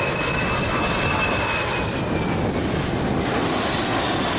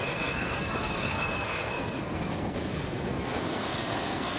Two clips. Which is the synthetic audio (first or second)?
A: second